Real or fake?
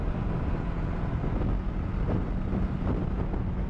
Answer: real